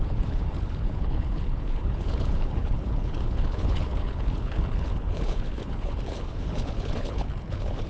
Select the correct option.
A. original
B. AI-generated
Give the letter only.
B